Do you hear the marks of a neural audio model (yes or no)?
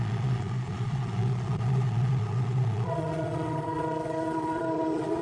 yes